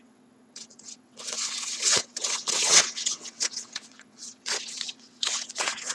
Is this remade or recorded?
remade